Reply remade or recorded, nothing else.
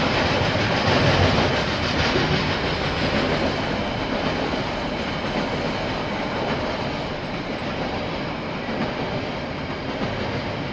recorded